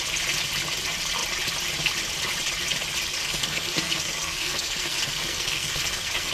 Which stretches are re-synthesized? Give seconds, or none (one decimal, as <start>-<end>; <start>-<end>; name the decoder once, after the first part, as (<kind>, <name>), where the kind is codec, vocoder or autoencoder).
3.2-6.3 (codec, SNAC)